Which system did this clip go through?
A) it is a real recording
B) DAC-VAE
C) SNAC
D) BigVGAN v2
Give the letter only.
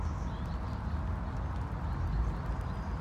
A